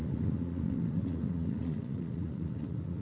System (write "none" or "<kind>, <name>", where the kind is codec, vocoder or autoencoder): vocoder, Vocos